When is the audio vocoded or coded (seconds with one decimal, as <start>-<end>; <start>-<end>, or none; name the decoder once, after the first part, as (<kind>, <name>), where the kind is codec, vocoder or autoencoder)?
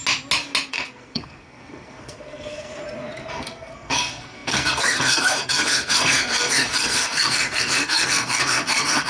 0.7-2.7 (codec, SNAC); 3.3-9.1